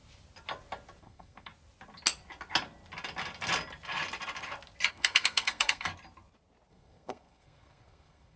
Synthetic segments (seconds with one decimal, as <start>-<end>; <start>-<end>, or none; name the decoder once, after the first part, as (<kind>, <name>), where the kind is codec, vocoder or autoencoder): 1.0-1.5 (codec, SNAC); 4.9-5.9; 6.7-8.4